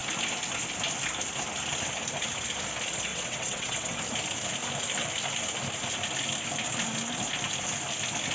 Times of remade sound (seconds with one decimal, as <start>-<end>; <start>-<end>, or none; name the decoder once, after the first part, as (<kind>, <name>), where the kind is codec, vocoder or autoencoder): 3.1-4.0 (vocoder, WaveNeXt)